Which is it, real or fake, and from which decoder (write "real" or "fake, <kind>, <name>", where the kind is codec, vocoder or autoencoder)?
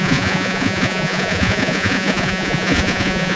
fake, vocoder, Vocos